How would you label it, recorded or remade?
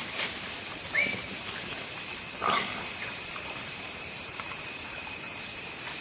remade